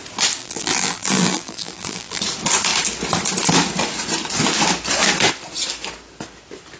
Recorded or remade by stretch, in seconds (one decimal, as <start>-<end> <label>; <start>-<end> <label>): 0.0-0.4 recorded; 0.4-2.2 remade; 2.2-6.8 recorded